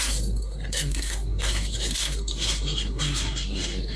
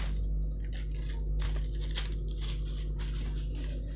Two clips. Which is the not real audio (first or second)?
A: first